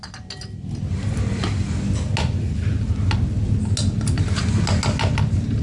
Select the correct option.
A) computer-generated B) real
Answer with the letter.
B